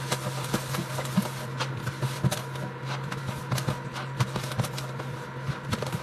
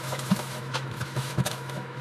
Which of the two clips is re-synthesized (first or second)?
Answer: second